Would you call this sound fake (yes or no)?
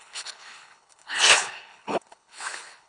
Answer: yes